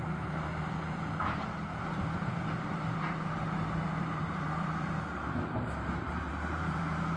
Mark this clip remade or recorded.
remade